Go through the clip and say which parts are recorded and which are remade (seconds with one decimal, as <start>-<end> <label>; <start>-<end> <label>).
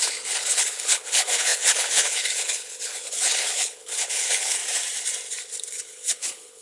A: 0.0-4.6 remade; 4.6-5.7 recorded; 5.7-6.6 remade